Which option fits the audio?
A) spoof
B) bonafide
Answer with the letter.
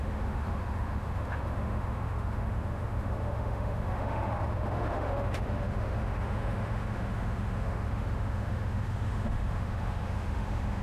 A